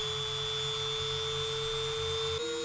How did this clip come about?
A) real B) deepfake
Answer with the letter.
A